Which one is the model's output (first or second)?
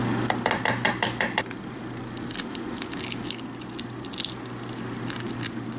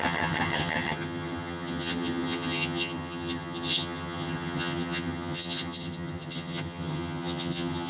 second